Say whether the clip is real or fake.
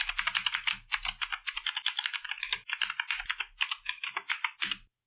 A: real